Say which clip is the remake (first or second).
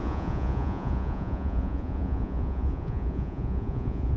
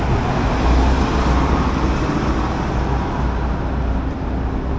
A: first